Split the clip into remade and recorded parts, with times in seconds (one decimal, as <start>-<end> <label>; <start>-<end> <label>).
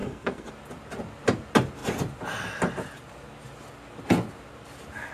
0.0-0.5 remade; 0.5-5.1 recorded